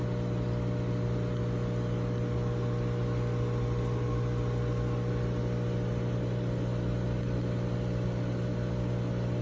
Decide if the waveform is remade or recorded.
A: recorded